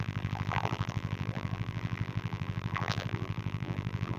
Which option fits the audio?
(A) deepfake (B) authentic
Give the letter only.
A